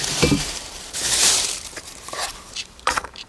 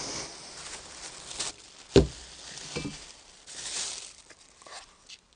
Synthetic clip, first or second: first